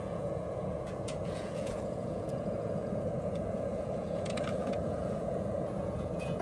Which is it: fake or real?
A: fake